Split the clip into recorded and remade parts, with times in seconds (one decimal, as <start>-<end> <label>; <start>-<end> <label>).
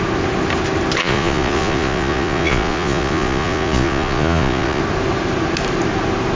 0.0-1.0 recorded; 1.0-4.8 remade; 4.8-6.3 recorded